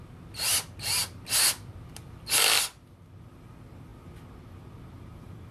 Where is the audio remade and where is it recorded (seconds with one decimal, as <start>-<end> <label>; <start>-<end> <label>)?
0.0-5.5 recorded